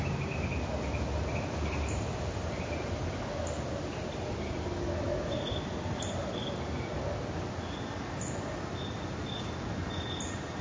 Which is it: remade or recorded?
recorded